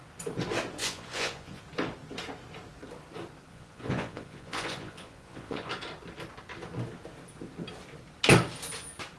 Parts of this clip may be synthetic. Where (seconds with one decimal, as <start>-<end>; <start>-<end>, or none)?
0.8-1.6; 3.5-5.7